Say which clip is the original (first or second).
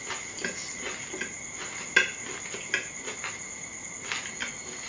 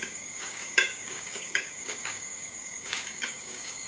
first